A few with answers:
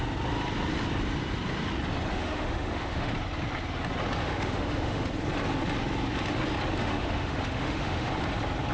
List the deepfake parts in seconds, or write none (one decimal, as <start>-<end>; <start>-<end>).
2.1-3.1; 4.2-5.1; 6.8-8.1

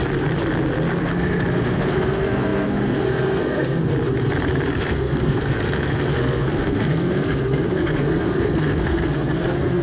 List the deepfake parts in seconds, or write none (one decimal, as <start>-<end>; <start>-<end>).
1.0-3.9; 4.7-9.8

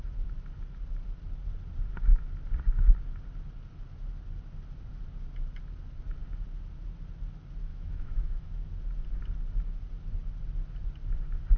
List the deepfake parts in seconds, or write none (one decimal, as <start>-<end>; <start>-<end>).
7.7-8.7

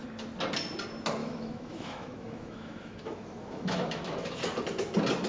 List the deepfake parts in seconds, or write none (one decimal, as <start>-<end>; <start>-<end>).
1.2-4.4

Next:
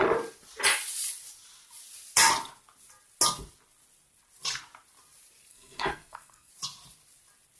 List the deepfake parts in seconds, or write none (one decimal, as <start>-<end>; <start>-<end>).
5.5-6.5

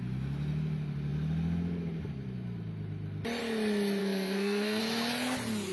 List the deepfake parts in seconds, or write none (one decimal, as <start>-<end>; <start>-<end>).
4.0-4.8